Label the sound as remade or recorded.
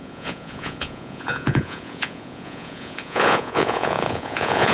remade